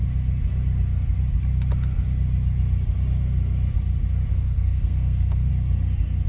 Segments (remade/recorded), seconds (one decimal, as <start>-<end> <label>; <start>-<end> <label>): 0.0-4.3 recorded; 4.3-5.5 remade; 5.5-6.3 recorded